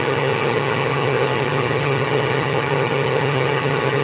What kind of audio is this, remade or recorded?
remade